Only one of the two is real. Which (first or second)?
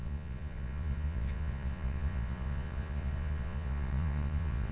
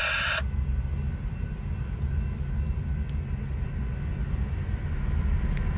second